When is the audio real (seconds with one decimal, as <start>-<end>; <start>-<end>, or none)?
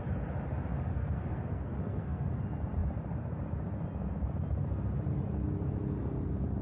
0.0-0.9; 2.3-6.6